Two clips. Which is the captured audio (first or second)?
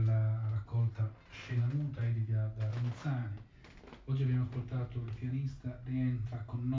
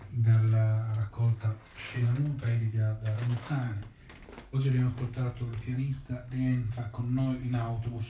first